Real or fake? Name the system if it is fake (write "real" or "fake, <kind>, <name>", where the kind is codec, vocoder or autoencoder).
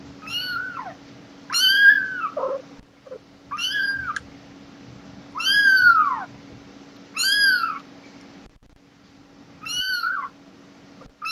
real